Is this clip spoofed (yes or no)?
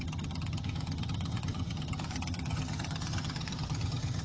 yes